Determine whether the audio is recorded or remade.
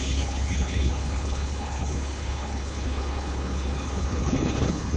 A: remade